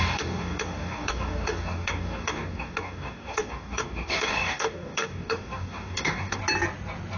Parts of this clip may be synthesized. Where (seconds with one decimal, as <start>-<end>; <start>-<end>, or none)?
0.0-6.4